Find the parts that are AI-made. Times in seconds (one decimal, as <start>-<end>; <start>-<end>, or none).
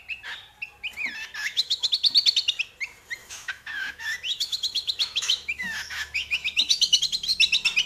1.4-1.9; 3.2-7.0